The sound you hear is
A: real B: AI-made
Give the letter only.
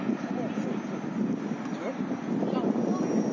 A